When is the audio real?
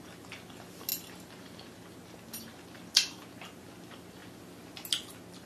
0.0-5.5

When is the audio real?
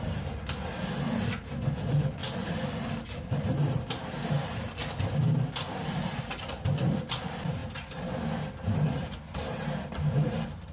0.0-10.7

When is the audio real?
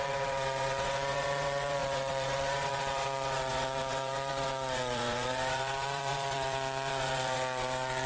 none